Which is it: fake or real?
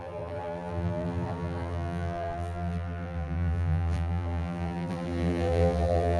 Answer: fake